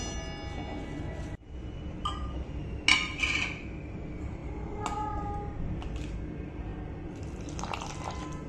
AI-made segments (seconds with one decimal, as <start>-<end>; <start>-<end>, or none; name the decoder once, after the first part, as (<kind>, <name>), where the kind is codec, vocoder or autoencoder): none

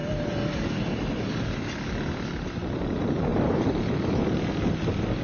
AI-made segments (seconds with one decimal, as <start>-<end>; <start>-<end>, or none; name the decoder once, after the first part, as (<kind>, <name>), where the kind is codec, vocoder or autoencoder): 3.3-4.2 (vocoder, BigVGAN v2)

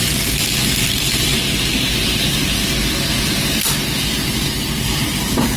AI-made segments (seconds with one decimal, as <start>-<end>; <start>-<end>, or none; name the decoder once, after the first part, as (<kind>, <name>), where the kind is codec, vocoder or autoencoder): none

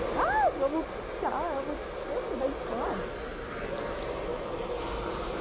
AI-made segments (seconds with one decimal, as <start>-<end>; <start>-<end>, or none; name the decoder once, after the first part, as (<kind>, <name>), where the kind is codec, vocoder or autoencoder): none